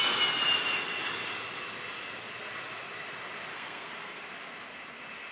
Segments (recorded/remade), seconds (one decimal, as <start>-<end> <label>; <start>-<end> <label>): 0.0-3.5 recorded; 3.5-4.2 remade; 4.2-5.3 recorded